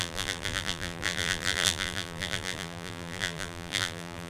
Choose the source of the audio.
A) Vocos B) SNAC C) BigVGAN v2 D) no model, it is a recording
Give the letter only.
C